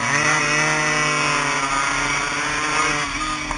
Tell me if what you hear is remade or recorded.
recorded